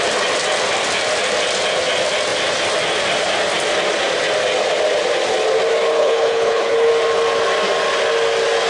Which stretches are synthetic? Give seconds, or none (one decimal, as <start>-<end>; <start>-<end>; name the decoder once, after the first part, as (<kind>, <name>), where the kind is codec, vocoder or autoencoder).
5.9-6.9 (codec, HILCodec)